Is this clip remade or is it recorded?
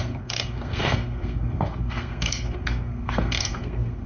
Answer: remade